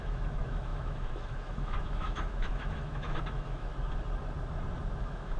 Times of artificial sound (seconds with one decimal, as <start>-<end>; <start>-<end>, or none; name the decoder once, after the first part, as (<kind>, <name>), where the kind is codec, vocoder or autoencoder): 0.0-3.7 (autoencoder, DAC-VAE); 5.0-5.4